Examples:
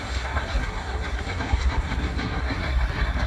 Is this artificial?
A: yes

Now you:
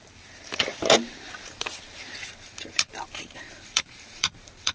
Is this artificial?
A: yes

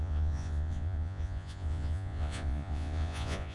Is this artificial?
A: yes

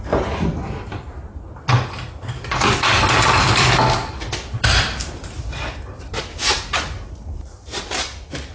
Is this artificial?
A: yes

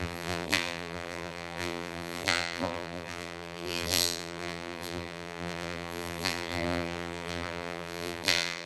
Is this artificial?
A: yes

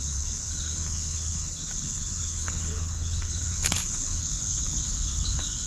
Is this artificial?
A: yes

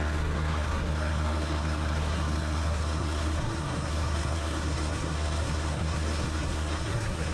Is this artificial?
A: yes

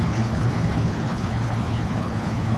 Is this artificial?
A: yes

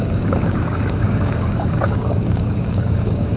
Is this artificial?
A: yes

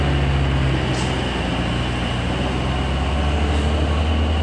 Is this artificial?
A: no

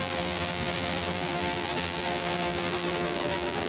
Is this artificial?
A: yes